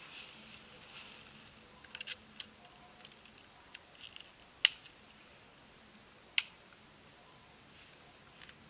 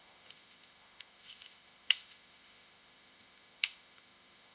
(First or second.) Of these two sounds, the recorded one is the first